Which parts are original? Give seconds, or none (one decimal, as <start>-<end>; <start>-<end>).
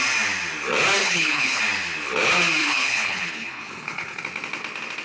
0.0-1.0; 1.6-2.6; 4.2-5.0